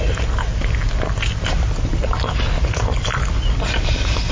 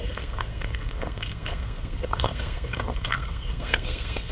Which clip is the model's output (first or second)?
second